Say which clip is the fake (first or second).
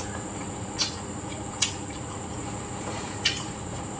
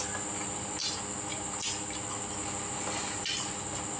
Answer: first